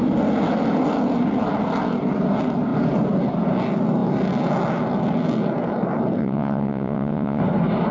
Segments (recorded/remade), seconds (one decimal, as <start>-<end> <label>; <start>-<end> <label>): 0.0-6.2 recorded; 6.2-7.4 remade; 7.4-7.9 recorded